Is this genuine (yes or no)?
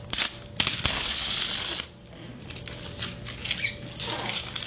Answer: yes